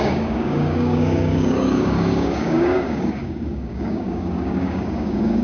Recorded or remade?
remade